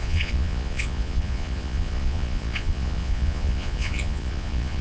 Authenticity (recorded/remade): remade